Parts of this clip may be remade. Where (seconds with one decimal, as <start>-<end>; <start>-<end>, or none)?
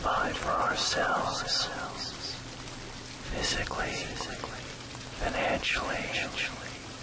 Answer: none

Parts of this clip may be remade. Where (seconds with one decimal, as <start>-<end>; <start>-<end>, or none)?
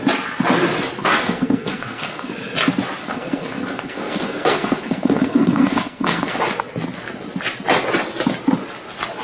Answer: 1.0-2.3; 3.0-6.4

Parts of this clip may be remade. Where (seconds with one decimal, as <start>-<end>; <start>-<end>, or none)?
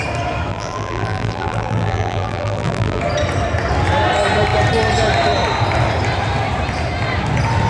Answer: 0.5-3.0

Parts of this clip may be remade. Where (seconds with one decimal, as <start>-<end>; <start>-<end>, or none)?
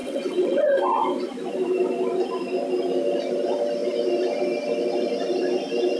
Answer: 0.0-0.8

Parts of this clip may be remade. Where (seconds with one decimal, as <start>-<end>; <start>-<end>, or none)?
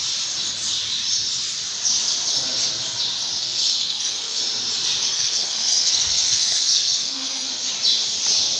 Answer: 3.4-4.4; 5.0-7.7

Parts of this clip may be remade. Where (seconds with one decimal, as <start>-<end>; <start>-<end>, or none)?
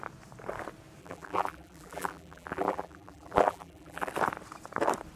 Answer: 1.0-4.1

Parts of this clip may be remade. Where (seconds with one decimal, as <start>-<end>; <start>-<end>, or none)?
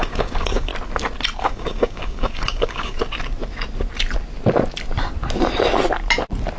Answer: 0.0-0.7; 1.4-3.0